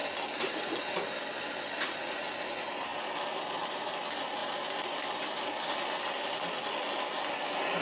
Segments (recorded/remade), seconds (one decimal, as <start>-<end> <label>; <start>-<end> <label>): 0.0-2.9 recorded; 2.9-3.9 remade; 3.9-4.4 recorded; 4.4-5.9 remade; 5.9-7.8 recorded